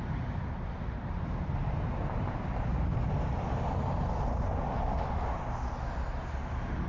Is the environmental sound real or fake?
real